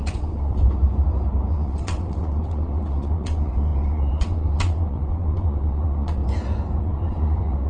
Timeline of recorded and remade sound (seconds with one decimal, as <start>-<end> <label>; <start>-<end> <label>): 0.0-0.6 remade; 0.6-1.5 recorded; 1.5-6.2 remade; 6.2-6.8 recorded; 6.8-7.7 remade